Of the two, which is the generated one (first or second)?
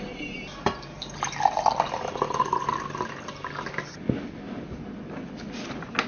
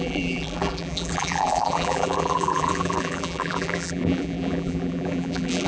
second